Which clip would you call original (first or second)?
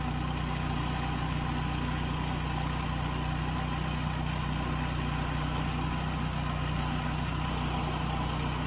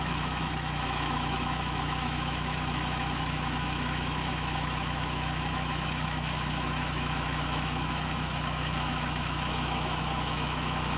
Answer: first